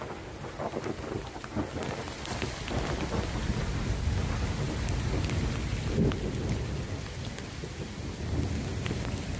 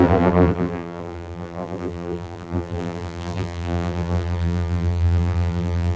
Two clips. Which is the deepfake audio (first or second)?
second